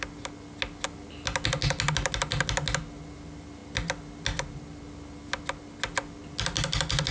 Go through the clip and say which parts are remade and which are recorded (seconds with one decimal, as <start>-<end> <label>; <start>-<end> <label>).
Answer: 0.0-7.1 recorded